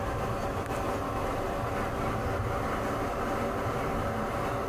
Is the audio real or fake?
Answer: real